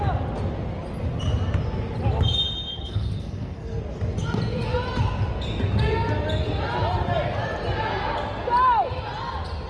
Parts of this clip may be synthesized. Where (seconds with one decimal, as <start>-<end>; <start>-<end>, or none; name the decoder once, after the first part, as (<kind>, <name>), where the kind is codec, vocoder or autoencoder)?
2.7-3.8 (codec, SNAC)